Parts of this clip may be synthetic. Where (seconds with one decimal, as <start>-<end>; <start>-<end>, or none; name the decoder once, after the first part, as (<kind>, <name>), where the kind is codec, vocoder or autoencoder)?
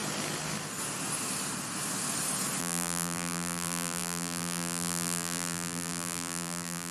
2.6-6.9 (vocoder, BigVGAN v2)